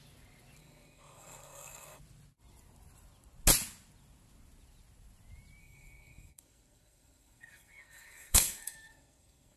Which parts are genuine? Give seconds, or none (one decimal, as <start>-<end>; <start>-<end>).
0.0-0.6; 2.0-5.6